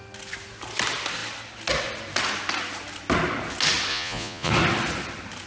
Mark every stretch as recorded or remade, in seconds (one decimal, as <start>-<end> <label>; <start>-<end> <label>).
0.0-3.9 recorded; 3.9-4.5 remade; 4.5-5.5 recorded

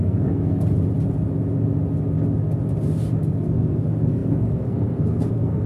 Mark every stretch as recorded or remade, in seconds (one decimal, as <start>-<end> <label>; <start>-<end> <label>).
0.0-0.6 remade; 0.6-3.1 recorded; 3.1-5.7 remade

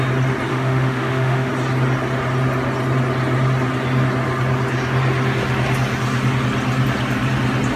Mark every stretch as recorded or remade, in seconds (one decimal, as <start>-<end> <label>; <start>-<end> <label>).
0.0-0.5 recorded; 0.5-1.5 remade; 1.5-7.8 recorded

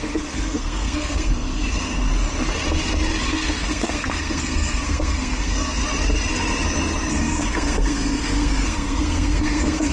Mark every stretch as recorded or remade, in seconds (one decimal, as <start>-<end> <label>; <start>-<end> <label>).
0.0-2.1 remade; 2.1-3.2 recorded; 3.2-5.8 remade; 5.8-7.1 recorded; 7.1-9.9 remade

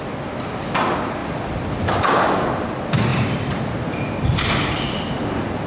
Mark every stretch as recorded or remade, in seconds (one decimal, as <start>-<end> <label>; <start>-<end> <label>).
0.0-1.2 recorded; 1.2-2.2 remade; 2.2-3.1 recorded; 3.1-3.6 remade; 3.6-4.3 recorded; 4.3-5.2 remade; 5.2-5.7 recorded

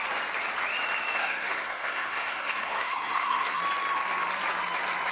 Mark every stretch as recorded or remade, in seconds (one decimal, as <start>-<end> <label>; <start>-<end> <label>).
0.0-1.2 recorded; 1.2-3.6 remade; 3.6-5.1 recorded